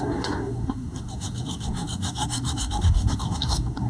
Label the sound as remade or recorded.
remade